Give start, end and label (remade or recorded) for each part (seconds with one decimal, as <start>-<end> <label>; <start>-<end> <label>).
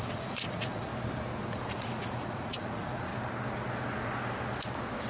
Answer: 0.0-0.9 remade; 0.9-1.5 recorded; 1.5-3.1 remade; 3.1-5.1 recorded